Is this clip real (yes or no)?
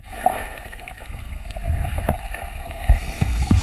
no